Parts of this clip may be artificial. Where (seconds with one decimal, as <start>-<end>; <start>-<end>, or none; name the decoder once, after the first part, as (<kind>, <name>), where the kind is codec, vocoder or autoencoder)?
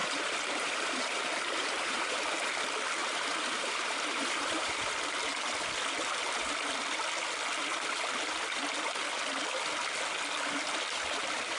0.0-1.2 (vocoder, BigVGAN v2); 1.6-2.2; 3.0-4.9